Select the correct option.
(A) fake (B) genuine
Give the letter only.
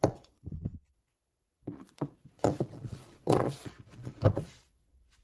A